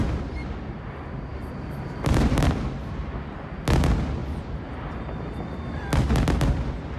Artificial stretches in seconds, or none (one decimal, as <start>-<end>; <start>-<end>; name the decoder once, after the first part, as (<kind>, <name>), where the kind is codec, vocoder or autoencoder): 1.3-2.5 (vocoder, BigVGAN v2)